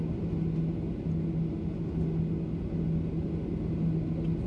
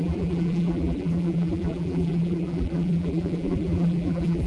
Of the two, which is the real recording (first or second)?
first